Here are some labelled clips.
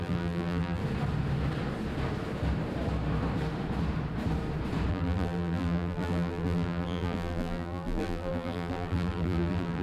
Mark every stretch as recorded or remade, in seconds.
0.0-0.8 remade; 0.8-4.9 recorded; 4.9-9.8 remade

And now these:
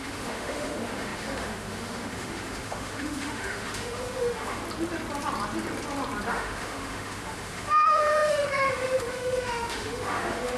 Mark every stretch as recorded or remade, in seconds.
0.0-4.6 remade; 4.6-6.3 recorded; 6.3-10.6 remade

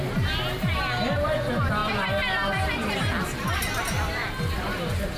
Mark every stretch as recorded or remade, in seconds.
0.0-5.2 recorded

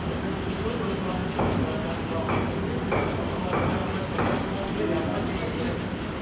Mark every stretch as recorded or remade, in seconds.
0.0-6.2 recorded

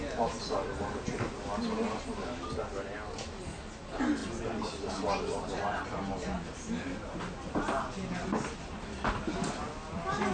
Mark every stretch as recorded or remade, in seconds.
0.0-10.3 recorded

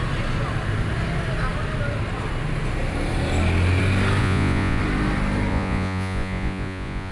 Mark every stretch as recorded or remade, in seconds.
0.0-4.2 recorded; 4.2-4.8 remade; 4.8-5.5 recorded; 5.5-7.1 remade